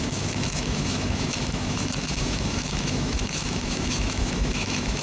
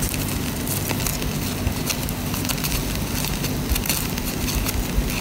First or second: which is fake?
first